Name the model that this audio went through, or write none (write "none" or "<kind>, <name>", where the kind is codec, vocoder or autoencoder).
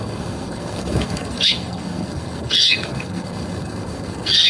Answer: codec, SNAC